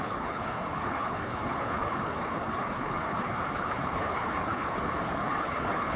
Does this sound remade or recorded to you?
remade